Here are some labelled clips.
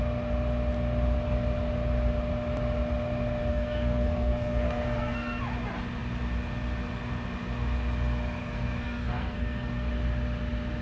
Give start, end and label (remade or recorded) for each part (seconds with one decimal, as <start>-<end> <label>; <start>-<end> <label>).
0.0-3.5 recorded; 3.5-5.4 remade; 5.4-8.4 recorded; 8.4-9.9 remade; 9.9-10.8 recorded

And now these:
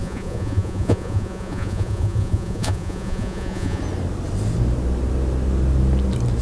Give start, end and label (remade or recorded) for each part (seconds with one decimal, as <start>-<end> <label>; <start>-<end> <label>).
0.0-3.8 remade; 3.8-6.4 recorded

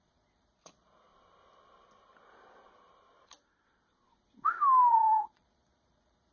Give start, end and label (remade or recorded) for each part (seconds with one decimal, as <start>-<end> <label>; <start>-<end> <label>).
0.0-1.1 remade; 1.1-4.9 recorded; 4.9-6.3 remade

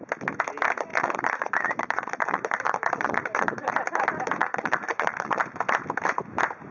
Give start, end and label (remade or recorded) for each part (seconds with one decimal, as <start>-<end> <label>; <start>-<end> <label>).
0.0-0.9 recorded; 0.9-3.7 remade; 3.7-4.4 recorded; 4.4-5.4 remade; 5.4-6.7 recorded

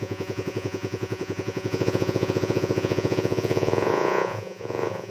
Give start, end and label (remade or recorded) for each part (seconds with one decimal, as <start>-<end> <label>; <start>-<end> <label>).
0.0-5.1 remade

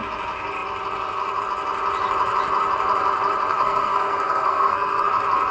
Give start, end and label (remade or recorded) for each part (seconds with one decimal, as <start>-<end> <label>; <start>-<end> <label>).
0.0-3.5 recorded; 3.5-5.1 remade; 5.1-5.5 recorded

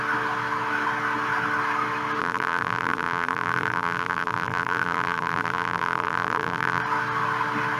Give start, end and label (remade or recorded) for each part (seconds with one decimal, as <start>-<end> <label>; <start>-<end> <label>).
0.0-2.2 recorded; 2.2-6.8 remade; 6.8-7.8 recorded